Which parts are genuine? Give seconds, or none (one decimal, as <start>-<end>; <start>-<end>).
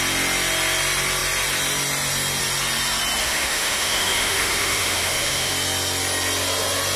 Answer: 0.0-3.2; 5.5-7.0